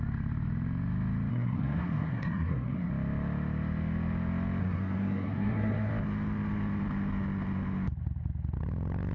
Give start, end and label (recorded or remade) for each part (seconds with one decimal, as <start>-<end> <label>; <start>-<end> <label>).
0.0-1.3 recorded; 1.3-2.9 remade; 2.9-4.6 recorded; 4.6-5.9 remade; 5.9-9.1 recorded

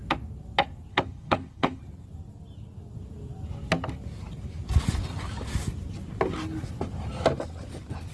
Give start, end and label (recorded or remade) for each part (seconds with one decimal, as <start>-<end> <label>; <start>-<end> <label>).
0.0-0.9 recorded; 0.9-1.8 remade; 1.8-8.1 recorded

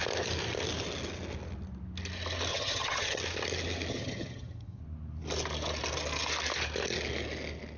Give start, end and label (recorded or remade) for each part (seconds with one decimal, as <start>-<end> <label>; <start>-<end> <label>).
0.0-2.5 recorded; 2.5-3.2 remade; 3.2-3.9 recorded; 3.9-4.8 remade; 4.8-7.8 recorded

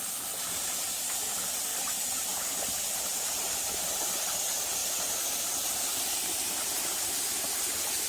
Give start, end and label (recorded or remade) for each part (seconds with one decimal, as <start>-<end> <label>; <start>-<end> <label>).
0.0-1.7 recorded; 1.7-3.5 remade; 3.5-8.1 recorded

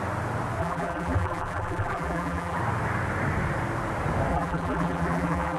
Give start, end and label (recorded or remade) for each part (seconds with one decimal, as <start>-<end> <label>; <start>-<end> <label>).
0.0-0.6 recorded; 0.6-2.6 remade; 2.6-4.3 recorded; 4.3-5.6 remade

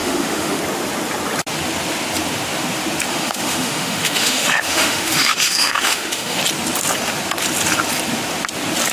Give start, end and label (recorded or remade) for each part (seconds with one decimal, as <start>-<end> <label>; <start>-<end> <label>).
0.0-0.6 remade; 0.6-3.1 recorded; 3.1-6.4 remade; 6.4-8.9 recorded

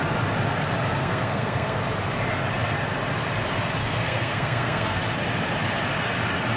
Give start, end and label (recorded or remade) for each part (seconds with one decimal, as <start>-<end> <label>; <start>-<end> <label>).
0.0-1.0 recorded; 1.0-1.8 remade; 1.8-3.8 recorded; 3.8-5.0 remade; 5.0-6.6 recorded

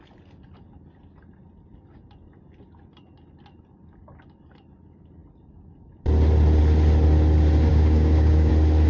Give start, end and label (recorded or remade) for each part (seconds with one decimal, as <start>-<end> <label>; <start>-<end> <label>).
0.0-7.7 recorded; 7.7-8.5 remade; 8.5-8.9 recorded